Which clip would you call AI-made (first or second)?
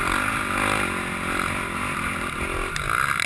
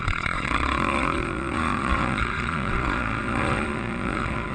second